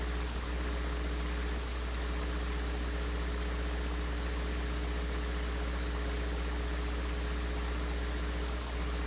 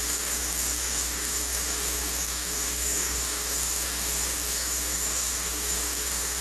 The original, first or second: first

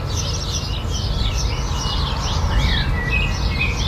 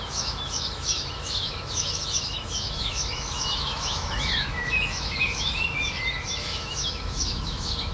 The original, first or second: first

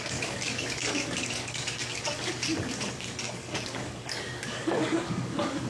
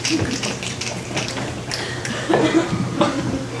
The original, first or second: second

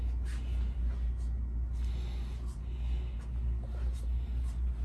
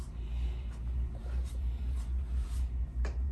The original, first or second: first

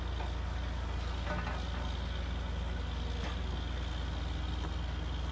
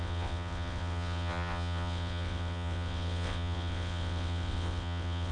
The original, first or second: first